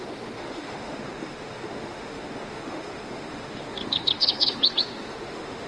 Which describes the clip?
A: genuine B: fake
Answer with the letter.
B